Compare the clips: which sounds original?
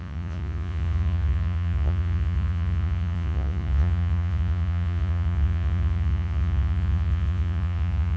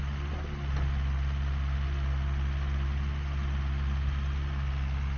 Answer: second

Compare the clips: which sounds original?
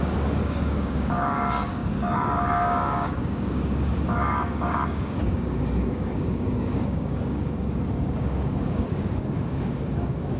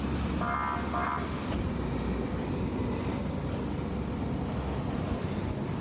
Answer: second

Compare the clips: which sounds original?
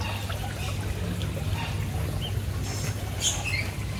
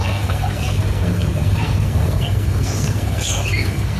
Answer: first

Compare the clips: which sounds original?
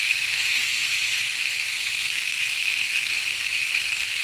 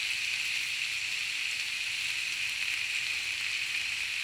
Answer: second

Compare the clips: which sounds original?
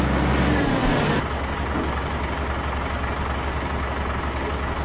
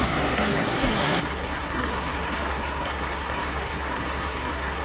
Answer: first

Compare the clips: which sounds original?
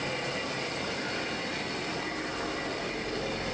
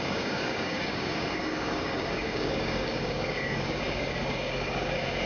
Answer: first